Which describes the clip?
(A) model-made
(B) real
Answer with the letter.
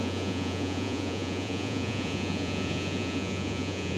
A